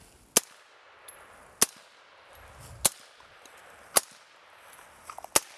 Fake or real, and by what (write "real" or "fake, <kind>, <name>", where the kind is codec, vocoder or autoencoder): real